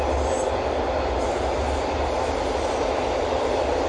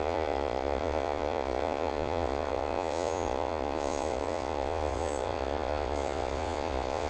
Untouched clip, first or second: first